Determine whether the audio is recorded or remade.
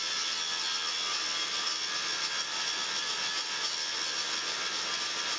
recorded